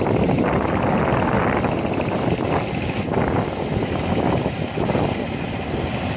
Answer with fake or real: real